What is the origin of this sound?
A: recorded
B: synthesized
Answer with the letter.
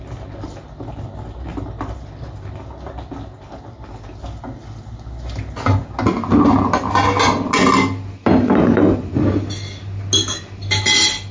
A